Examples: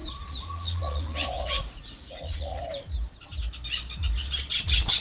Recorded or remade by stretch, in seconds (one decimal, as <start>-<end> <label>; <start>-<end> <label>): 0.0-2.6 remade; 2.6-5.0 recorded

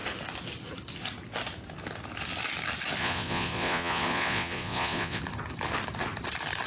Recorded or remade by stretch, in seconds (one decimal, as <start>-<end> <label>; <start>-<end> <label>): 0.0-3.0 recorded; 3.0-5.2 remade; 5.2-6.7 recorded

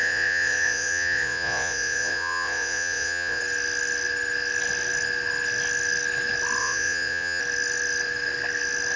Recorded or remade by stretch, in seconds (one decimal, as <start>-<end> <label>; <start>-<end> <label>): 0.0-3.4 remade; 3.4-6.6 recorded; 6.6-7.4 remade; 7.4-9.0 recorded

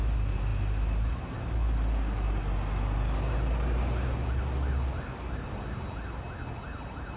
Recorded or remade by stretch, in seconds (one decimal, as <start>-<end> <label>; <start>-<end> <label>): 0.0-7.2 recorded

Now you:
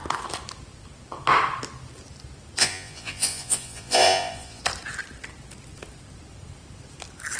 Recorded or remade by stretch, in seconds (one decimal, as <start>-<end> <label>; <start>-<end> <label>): 0.0-2.6 recorded; 2.6-4.6 remade; 4.6-7.4 recorded